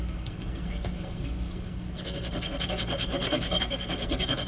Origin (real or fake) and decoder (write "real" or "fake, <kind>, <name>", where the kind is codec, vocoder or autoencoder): fake, codec, SNAC